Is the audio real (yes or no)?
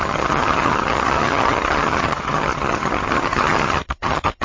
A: no